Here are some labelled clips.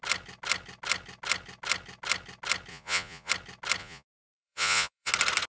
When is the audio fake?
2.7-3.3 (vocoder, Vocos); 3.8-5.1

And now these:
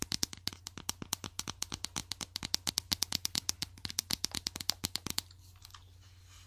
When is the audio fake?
none

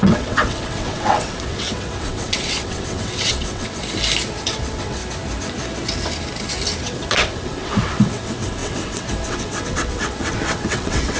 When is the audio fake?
0.0-3.8 (vocoder, WaveNeXt); 4.4-5.0; 6.8-11.2

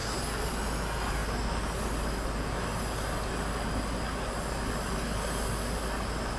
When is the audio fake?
none

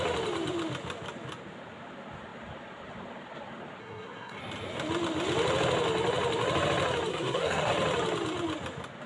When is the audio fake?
3.8-4.4 (codec, SNAC); 7.1-7.7

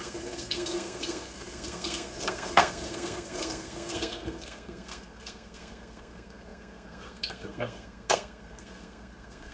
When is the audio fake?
0.0-9.5 (codec, SNAC)

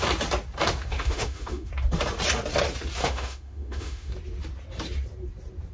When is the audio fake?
0.9-1.7 (autoencoder, DAC-VAE); 3.0-4.1

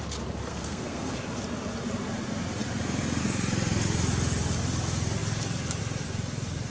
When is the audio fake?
0.5-1.1 (codec, SNAC)